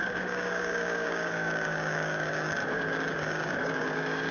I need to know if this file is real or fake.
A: fake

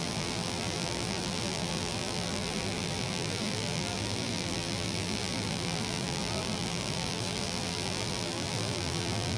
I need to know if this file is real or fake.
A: fake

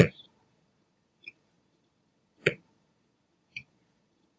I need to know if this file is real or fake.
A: fake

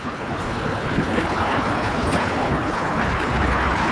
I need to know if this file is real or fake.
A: fake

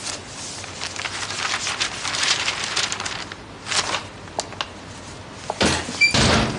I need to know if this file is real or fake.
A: real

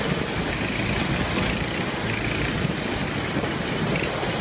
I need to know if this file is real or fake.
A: real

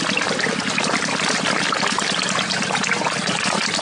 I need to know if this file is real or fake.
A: real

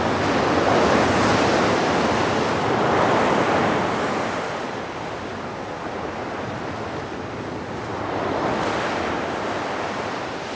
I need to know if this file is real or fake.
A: real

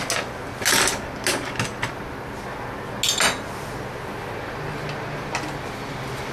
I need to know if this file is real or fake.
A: real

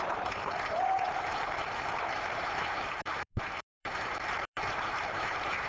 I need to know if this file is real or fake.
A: fake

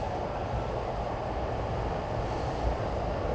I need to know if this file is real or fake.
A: real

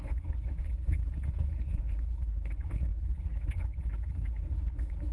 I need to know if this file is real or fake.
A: fake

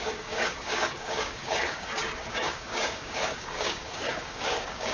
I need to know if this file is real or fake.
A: fake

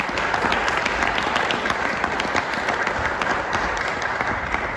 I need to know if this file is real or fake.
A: real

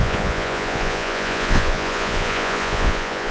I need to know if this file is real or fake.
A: fake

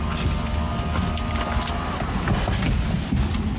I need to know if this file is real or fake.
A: real